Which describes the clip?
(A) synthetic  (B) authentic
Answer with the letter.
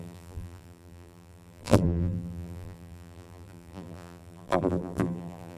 A